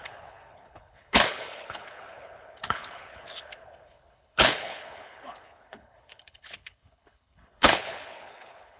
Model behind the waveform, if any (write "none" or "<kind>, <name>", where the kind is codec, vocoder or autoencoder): codec, HILCodec